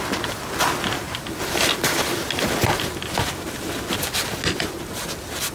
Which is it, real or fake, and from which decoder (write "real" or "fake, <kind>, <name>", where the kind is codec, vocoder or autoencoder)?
real